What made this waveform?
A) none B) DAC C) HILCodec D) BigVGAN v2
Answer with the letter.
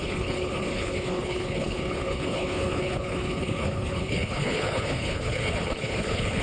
C